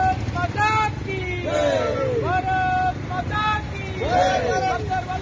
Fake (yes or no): no